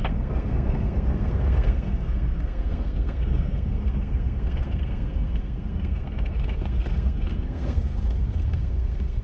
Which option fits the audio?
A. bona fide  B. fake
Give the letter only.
B